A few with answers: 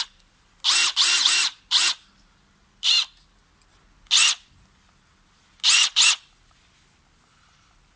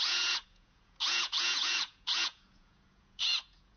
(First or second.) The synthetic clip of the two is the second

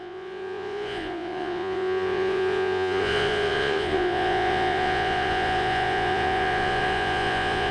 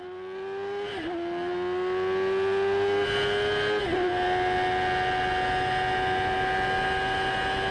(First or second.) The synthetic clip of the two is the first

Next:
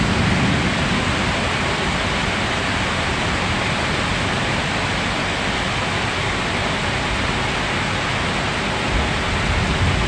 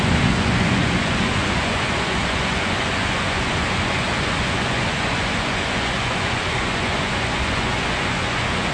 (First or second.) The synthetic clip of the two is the second